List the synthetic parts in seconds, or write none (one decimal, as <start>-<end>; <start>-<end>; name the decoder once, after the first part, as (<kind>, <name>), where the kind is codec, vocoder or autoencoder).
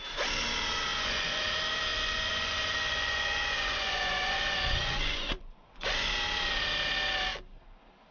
0.9-1.4 (vocoder, Vocos); 1.9-6.1